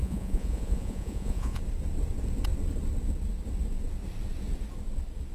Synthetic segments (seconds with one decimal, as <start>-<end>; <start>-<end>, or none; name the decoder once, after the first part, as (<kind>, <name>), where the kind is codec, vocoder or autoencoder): 0.0-1.6 (vocoder, Vocos)